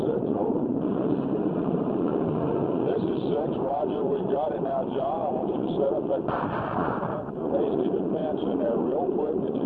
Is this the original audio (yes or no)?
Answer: no